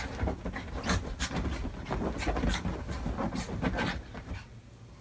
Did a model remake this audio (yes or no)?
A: no